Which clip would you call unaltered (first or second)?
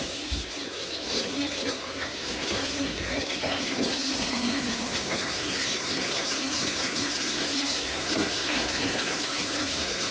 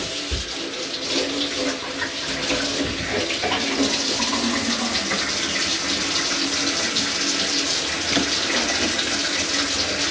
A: second